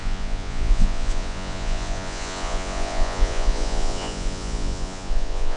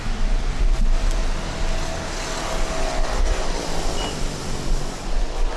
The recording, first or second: second